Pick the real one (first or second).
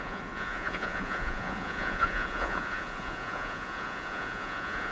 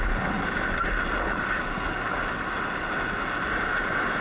second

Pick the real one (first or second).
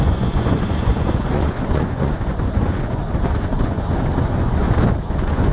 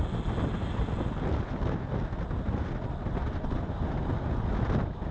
second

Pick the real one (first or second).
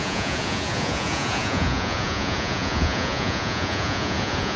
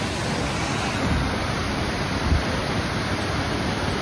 second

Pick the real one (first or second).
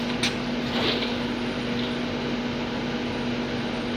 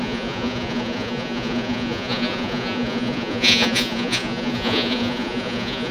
first